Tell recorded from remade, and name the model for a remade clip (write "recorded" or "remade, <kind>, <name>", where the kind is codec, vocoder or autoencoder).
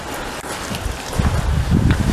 recorded